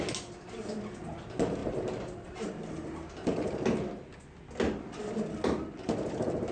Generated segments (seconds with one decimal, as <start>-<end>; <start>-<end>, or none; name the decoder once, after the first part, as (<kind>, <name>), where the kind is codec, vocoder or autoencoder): 1.6-2.6 (vocoder, BigVGAN v2)

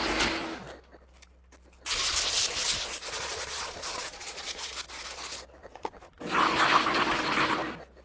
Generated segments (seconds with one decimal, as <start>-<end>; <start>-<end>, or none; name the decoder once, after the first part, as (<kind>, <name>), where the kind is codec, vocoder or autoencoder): 3.0-4.7 (vocoder, Vocos); 5.6-6.2

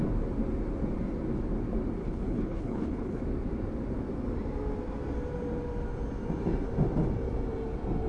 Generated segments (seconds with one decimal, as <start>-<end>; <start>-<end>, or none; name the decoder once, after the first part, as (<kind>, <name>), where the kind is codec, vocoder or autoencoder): 2.0-3.2 (codec, HILCodec)

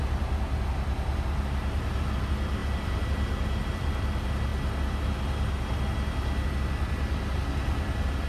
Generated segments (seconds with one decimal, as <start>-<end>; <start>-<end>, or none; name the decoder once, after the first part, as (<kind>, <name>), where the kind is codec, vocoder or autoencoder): 2.6-3.9 (vocoder, BigVGAN v2)

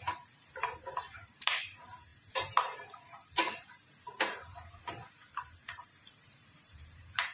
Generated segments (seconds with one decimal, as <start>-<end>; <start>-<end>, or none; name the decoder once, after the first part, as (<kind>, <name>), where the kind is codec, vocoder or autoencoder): 0.0-7.3 (vocoder, BigVGAN v2)

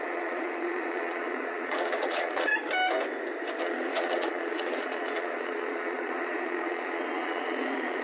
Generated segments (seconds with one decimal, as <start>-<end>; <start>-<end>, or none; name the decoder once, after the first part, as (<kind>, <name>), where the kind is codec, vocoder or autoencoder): 0.0-2.5 (vocoder, Vocos); 3.6-8.0